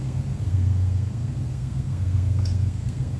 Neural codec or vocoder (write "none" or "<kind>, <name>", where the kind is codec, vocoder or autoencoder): codec, SNAC